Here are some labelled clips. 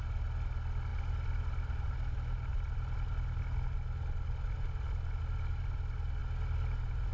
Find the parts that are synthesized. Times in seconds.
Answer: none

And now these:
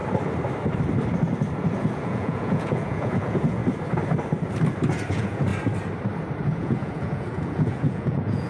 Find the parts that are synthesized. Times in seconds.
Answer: 1.9-3.6; 5.1-5.5; 6.4-8.5

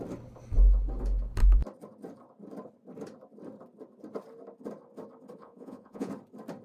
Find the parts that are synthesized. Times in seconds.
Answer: 5.4-6.1

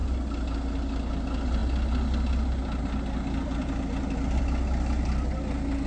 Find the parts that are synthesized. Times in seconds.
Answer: none